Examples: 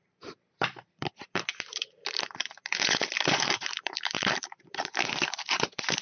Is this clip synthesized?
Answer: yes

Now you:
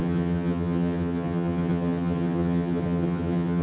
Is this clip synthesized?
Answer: yes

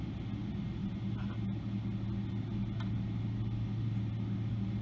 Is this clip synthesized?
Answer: no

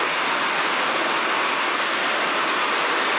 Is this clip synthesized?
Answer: no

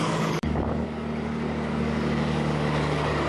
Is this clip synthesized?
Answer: yes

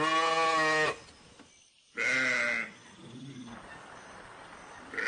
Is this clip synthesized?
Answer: no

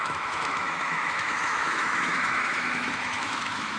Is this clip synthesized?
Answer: yes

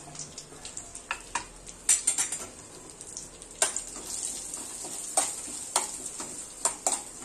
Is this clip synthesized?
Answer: no